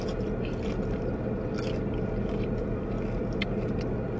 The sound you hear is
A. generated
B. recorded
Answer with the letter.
B